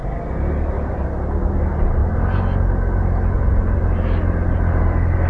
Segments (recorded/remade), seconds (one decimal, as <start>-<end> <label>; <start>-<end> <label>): 0.0-5.3 recorded